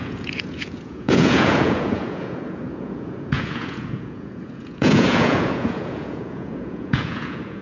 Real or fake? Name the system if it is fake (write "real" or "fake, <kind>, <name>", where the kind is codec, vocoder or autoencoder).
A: fake, vocoder, Vocos